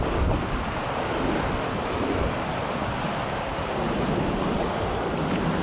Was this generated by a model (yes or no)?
no